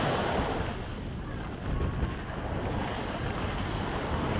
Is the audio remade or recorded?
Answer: recorded